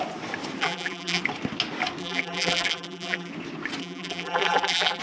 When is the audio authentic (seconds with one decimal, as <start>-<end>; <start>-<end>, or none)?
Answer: 0.0-0.6; 1.2-2.0; 3.3-3.8